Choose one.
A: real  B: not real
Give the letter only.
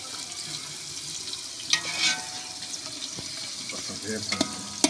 A